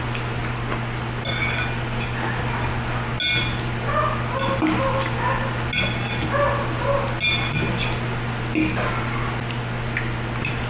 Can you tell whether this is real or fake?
real